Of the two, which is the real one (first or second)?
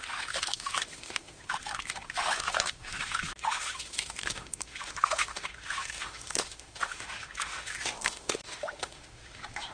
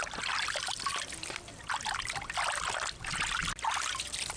second